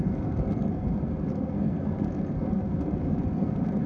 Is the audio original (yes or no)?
no